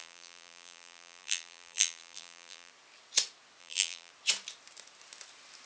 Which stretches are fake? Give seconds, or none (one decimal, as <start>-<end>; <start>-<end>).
0.0-2.7; 3.6-4.1